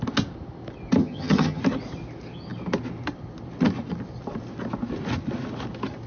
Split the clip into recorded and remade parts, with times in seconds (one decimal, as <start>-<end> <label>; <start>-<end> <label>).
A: 0.0-1.0 recorded; 1.0-1.6 remade; 1.6-6.1 recorded